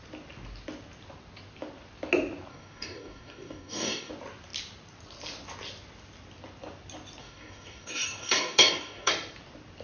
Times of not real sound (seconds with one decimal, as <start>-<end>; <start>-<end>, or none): 2.5-4.1; 7.2-9.1